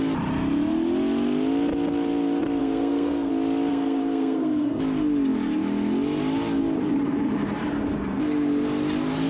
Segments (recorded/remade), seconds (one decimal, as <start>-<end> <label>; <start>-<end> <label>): 0.0-2.6 recorded; 2.6-3.3 remade; 3.3-3.7 recorded; 3.7-4.8 remade; 4.8-9.3 recorded